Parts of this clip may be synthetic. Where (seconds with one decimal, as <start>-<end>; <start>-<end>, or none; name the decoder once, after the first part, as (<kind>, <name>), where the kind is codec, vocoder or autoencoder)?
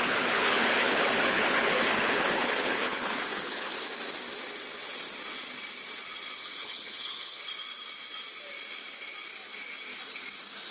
0.0-3.7 (codec, HILCodec); 6.4-7.4